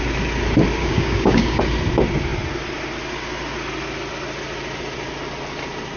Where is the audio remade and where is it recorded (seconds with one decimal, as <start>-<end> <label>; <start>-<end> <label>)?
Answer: 0.0-0.8 recorded; 0.8-1.6 remade; 1.6-6.0 recorded